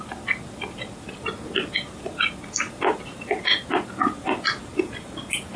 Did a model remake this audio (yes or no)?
no